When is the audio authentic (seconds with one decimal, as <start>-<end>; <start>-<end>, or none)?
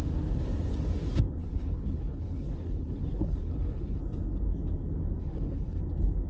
0.0-1.4; 4.0-5.2; 5.8-6.3